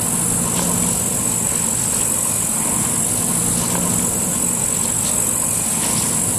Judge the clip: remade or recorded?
recorded